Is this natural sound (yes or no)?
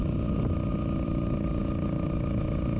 yes